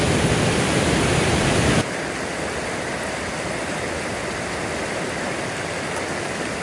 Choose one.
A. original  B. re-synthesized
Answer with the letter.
A